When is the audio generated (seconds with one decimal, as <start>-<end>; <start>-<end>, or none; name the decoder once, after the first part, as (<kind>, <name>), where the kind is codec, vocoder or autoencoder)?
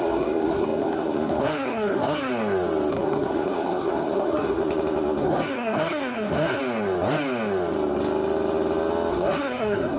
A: 0.0-2.3 (codec, SNAC); 2.9-4.6; 5.2-6.6; 9.1-10.0